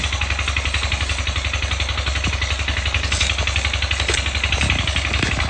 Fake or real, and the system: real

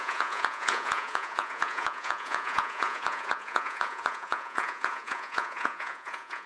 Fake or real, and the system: fake, vocoder, Vocos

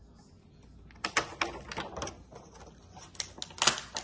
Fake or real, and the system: real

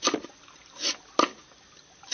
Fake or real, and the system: real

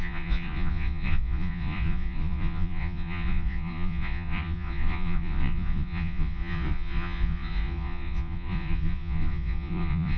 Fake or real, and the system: fake, vocoder, Vocos